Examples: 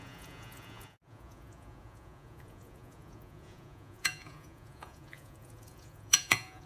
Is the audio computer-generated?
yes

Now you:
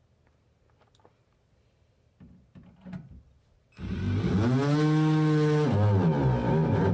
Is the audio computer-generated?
no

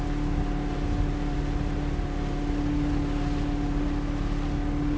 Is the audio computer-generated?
no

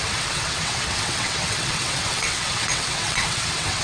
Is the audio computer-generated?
yes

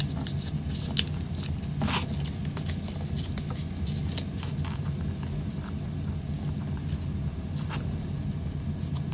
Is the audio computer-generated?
no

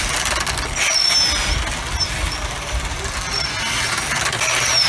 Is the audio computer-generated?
no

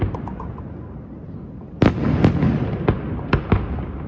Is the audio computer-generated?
no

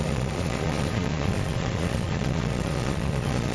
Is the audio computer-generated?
yes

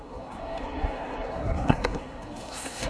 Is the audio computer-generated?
yes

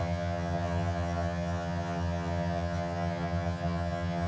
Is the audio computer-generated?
yes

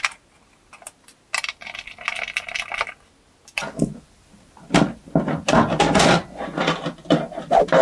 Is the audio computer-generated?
no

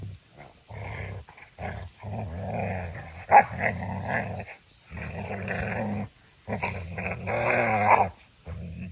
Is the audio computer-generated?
no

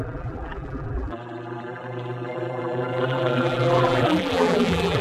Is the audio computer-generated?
yes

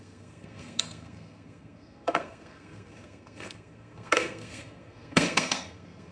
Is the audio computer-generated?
yes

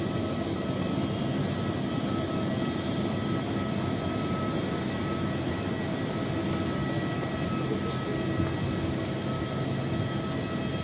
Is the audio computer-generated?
no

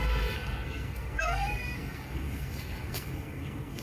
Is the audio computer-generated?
yes